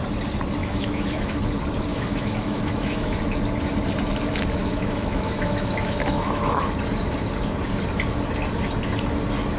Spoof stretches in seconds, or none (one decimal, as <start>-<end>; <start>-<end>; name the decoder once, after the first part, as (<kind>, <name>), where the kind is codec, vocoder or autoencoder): 0.6-1.4 (autoencoder, DAC-VAE); 1.9-3.2; 4.6-6.6